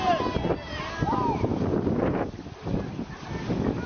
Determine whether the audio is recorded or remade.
recorded